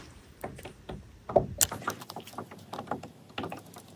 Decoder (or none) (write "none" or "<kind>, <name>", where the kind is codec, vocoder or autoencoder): none